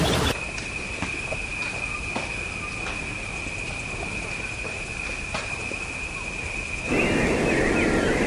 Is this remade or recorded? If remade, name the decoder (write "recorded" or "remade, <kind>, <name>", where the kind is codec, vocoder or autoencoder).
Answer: recorded